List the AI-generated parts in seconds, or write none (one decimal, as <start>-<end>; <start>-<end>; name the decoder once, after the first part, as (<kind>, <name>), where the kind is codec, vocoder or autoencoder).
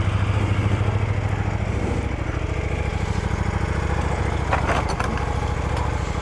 none